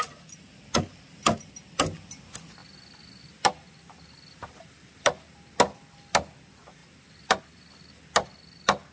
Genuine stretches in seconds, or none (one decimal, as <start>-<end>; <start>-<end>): 0.0-4.4; 5.0-8.9